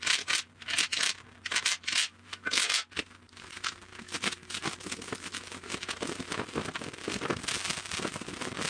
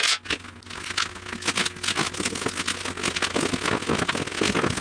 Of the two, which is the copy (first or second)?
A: first